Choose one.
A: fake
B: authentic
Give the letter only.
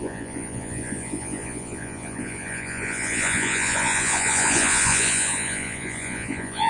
A